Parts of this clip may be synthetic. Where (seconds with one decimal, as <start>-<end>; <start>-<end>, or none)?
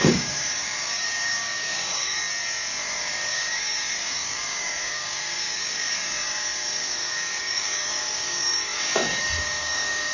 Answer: 0.0-2.2; 2.8-10.1